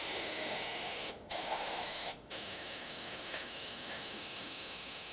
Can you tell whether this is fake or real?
fake